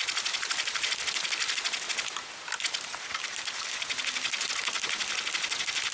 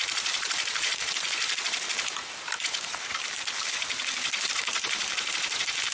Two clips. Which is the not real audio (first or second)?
second